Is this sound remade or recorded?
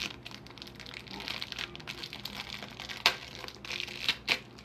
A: recorded